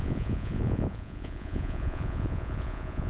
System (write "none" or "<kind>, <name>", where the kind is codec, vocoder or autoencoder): vocoder, Vocos